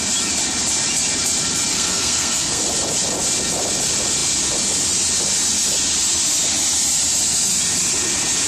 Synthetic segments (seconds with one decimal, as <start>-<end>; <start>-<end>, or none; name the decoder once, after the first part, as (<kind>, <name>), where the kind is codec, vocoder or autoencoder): 1.7-2.6 (codec, SNAC)